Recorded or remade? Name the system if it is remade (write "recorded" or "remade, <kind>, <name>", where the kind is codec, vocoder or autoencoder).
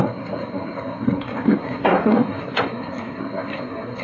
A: remade, codec, SNAC